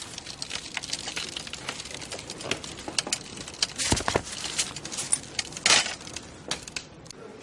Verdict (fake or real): real